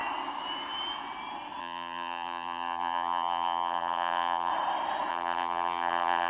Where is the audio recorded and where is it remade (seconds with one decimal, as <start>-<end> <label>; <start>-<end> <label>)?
0.0-1.6 recorded; 1.6-4.5 remade; 4.5-5.1 recorded; 5.1-6.3 remade